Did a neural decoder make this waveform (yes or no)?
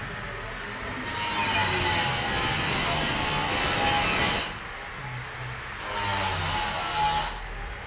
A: no